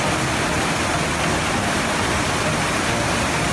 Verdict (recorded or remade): recorded